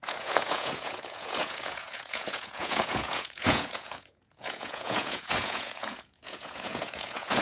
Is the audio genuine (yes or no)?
no